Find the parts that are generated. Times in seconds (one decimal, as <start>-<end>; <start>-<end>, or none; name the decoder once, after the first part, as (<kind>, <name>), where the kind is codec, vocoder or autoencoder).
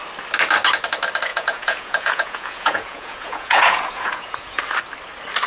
1.3-4.6 (vocoder, Vocos)